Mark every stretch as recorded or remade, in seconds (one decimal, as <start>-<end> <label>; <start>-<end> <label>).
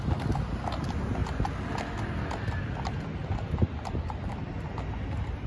0.0-5.5 recorded